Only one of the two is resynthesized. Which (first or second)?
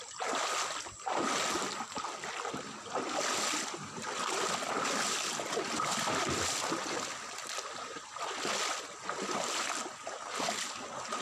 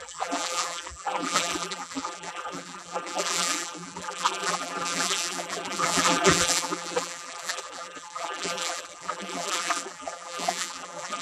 second